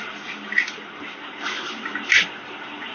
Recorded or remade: recorded